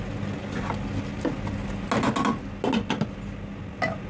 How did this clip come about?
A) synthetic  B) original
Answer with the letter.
B